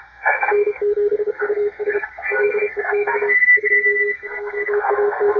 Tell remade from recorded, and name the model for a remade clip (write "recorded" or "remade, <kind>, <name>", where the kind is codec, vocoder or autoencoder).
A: remade, codec, SNAC